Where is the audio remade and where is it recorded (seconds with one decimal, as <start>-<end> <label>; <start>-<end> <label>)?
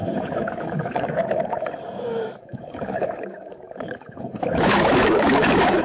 0.0-5.8 remade